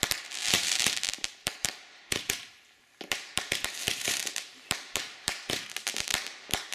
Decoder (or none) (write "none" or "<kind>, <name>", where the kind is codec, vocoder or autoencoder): vocoder, BigVGAN v2